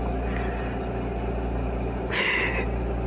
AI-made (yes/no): no